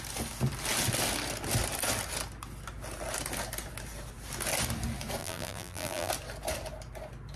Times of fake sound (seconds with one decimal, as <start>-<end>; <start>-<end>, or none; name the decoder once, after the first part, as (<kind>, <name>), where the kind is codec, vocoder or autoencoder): 5.2-6.1 (vocoder, BigVGAN v2)